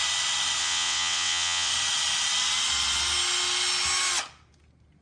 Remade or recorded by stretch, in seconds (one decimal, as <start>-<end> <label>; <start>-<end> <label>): 0.0-0.6 recorded; 0.6-1.7 remade; 1.7-5.0 recorded